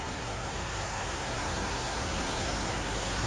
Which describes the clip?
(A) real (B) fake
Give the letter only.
B